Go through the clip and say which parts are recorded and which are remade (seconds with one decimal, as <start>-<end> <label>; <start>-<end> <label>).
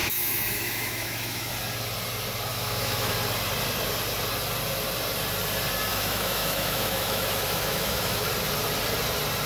0.0-1.5 remade; 1.5-2.5 recorded; 2.5-3.1 remade; 3.1-5.9 recorded; 5.9-8.3 remade; 8.3-9.5 recorded